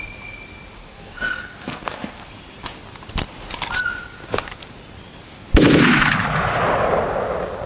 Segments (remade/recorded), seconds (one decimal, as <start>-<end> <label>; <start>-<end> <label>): 0.0-0.8 recorded; 0.8-2.3 remade; 2.3-7.7 recorded